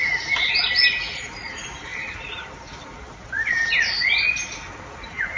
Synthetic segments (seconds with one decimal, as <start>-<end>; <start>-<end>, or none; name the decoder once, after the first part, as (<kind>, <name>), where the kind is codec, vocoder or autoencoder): none